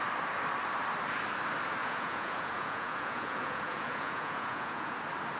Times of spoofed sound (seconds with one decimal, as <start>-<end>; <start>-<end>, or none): 1.8-5.0